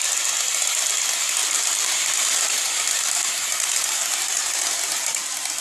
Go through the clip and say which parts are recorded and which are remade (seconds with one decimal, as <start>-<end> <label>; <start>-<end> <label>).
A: 0.0-1.4 recorded; 1.4-3.3 remade; 3.3-5.6 recorded